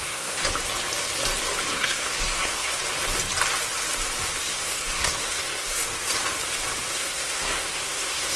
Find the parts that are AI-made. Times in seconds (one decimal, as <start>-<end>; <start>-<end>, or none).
0.0-0.4; 1.7-2.8; 4.4-5.8; 6.9-8.4